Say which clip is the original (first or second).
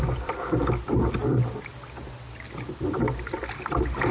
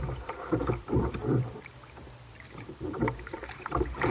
first